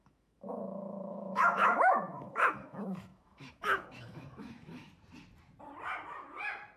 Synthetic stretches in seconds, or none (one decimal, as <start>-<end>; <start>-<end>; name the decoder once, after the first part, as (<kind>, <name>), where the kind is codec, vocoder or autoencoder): 0.0-4.9 (autoencoder, DAC-VAE)